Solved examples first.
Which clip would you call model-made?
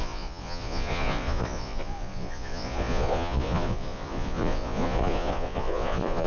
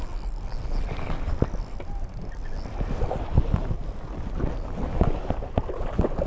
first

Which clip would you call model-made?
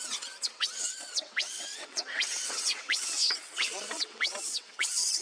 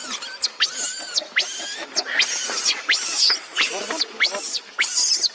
first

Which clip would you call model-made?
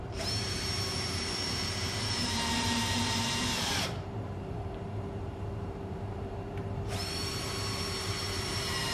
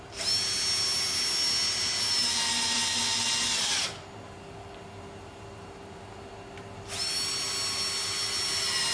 first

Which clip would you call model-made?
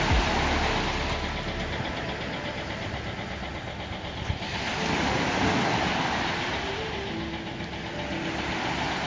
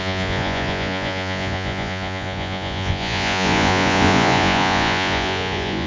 second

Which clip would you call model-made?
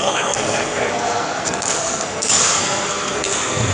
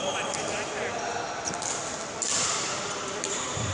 first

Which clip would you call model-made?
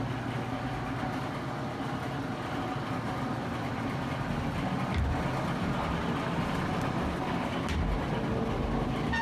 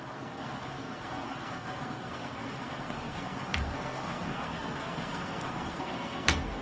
second